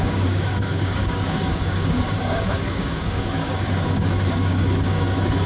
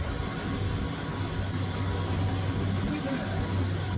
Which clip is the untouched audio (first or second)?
second